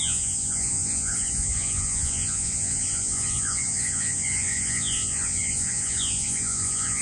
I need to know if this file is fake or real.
fake